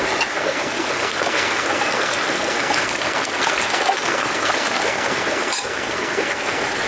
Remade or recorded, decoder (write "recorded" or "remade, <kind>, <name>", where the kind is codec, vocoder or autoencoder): remade, codec, SNAC